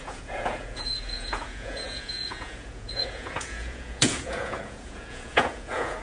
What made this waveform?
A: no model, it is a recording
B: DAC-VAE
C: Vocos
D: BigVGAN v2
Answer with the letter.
C